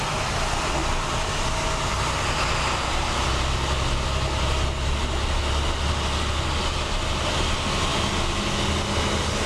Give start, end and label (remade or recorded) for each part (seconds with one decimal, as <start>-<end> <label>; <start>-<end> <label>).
0.0-9.5 recorded